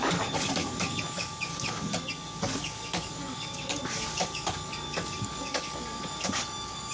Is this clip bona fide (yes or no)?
no